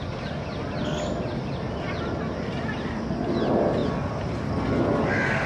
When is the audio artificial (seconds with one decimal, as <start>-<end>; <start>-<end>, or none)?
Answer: none